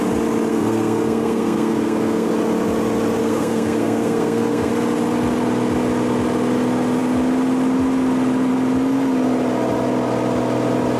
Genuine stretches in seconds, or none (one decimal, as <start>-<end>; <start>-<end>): 0.0-0.5; 2.3-3.2; 4.7-11.0

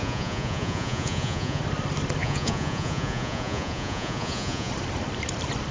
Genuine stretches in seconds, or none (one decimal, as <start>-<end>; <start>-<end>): 1.6-2.2; 4.7-5.7

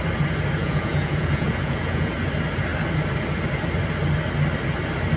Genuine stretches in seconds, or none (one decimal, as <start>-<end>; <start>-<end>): 0.0-0.6; 2.1-5.2

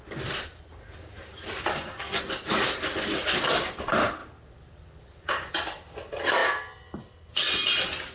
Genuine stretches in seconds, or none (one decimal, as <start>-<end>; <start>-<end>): 0.0-1.7; 2.2-8.1

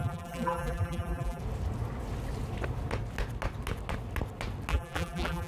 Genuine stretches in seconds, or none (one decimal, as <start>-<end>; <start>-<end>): 1.4-4.7

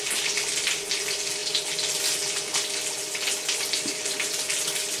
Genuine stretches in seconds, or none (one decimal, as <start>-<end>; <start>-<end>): 0.0-5.0

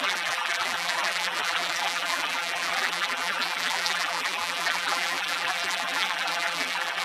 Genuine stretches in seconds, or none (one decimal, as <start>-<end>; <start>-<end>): none

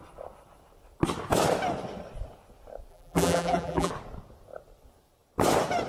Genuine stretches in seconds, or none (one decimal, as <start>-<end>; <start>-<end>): 0.0-2.9; 3.9-5.9